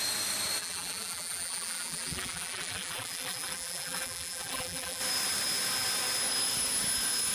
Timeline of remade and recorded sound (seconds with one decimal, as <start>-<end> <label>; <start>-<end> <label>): 0.0-0.6 recorded; 0.6-5.0 remade; 5.0-7.3 recorded